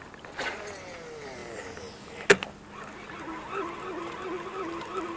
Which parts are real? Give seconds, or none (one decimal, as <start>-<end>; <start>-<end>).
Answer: 0.0-5.2